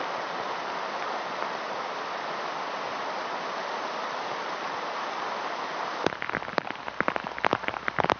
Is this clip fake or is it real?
real